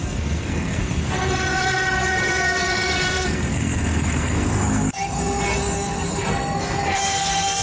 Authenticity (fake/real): fake